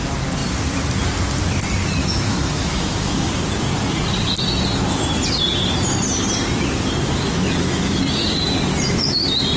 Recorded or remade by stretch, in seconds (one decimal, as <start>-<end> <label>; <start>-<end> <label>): 0.0-2.0 recorded; 2.0-3.3 remade; 3.3-7.3 recorded; 7.3-8.0 remade; 8.0-9.6 recorded